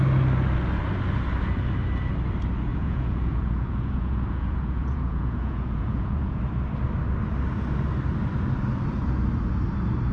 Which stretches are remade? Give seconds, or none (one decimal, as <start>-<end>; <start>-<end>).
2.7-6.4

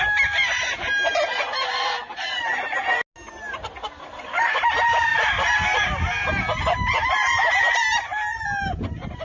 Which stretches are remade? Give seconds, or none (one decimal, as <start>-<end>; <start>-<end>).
none

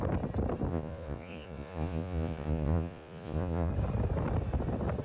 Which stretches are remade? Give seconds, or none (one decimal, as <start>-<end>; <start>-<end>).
0.7-3.7

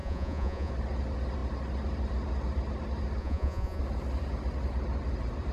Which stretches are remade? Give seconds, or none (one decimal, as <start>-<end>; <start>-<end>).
0.0-0.7; 3.2-3.8

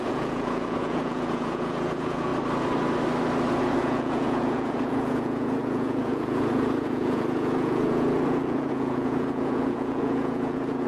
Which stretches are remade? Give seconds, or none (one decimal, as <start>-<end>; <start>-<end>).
0.0-2.3; 3.6-10.9

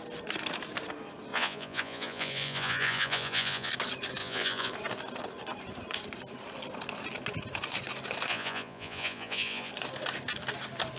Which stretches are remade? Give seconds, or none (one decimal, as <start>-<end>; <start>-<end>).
1.3-3.7; 4.2-4.7; 8.3-9.7

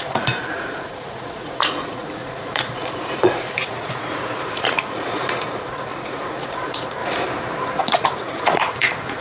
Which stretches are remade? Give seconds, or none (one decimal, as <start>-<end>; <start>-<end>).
0.0-7.0; 7.8-9.2

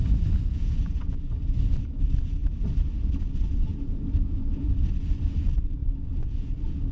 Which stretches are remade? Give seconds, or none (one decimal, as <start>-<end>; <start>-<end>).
0.4-1.3; 3.7-4.7; 5.8-6.9